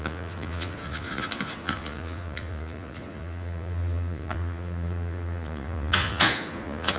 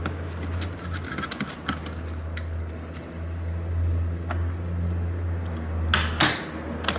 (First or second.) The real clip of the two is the second